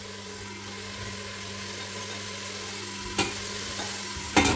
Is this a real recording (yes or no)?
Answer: yes